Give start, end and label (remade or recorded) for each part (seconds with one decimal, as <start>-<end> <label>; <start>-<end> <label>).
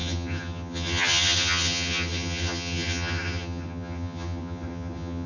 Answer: 0.0-5.3 remade